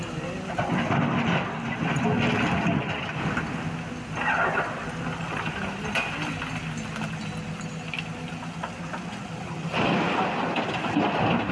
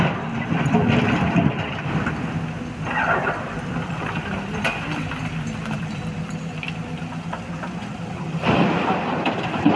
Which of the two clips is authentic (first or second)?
first